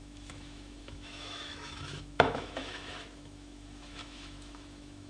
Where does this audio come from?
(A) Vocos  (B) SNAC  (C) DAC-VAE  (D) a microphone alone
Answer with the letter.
C